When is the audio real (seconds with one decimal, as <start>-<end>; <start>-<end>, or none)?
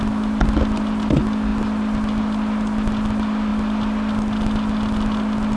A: 0.0-5.6